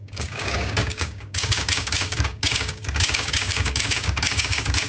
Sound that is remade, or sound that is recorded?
remade